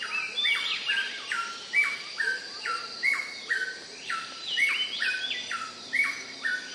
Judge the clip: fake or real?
fake